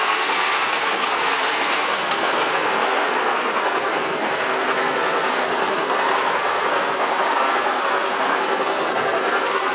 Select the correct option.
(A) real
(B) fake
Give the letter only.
B